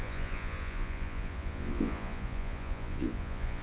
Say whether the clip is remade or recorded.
remade